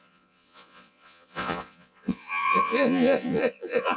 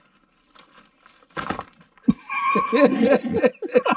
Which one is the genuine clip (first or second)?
second